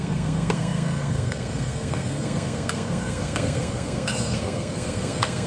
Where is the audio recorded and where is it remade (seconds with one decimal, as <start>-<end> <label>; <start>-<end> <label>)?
0.0-5.5 remade